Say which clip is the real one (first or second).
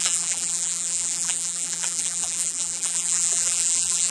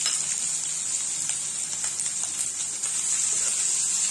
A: second